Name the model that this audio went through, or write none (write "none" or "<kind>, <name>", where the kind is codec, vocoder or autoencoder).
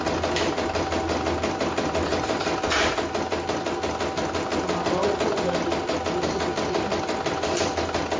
none